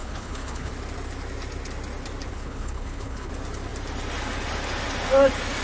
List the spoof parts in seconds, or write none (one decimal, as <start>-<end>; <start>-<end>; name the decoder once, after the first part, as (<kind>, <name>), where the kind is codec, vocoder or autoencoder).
0.0-0.7 (codec, HILCodec); 2.3-3.3